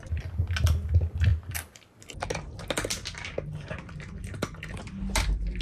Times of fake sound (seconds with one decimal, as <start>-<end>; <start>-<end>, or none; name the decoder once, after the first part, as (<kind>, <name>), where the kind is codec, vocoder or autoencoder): none